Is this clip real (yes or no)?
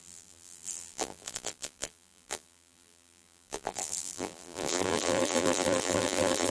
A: no